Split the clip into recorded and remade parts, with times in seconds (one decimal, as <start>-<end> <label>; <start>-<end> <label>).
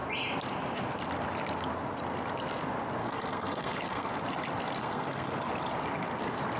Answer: 0.0-3.0 recorded; 3.0-4.1 remade; 4.1-4.8 recorded; 4.8-5.5 remade; 5.5-6.6 recorded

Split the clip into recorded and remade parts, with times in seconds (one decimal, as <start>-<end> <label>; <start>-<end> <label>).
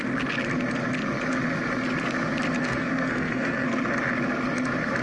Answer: 0.0-2.6 recorded; 2.6-3.8 remade; 3.8-5.0 recorded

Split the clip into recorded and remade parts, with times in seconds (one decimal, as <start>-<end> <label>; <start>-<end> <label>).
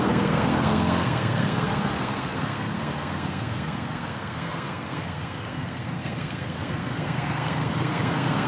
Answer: 0.0-8.5 remade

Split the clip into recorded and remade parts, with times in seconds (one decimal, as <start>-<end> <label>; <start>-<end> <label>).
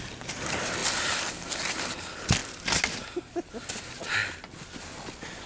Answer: 0.0-5.5 recorded